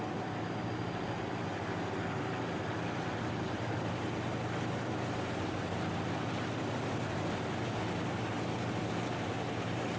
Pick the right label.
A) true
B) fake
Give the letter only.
A